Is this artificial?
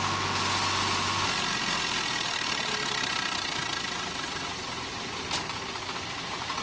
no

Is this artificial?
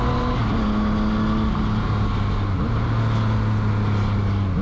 no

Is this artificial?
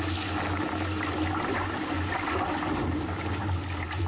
no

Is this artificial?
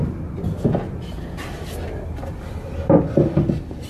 no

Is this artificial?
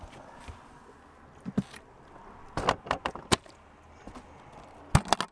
no